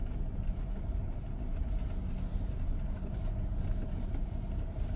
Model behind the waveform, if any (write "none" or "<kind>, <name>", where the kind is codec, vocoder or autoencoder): none